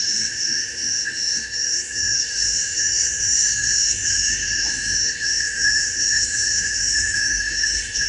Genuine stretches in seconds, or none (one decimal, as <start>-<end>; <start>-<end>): none